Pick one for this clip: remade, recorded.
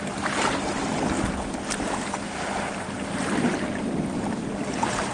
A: recorded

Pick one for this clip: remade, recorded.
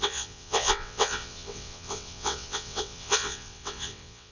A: remade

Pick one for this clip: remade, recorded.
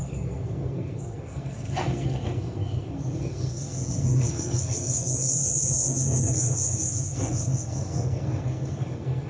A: remade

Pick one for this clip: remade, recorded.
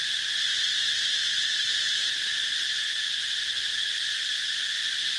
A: recorded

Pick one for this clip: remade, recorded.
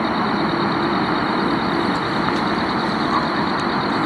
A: recorded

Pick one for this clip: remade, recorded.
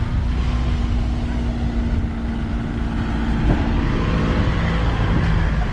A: recorded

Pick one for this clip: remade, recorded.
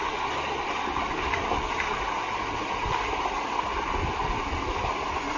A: recorded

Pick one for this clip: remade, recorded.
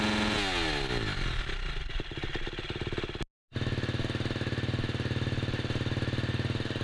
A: recorded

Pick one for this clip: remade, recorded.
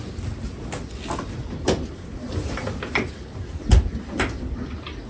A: recorded